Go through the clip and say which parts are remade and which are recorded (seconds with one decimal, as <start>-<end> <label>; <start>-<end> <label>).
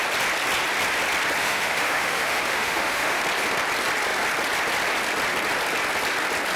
0.0-1.4 recorded; 1.4-3.2 remade; 3.2-6.6 recorded